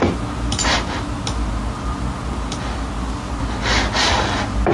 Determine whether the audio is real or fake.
real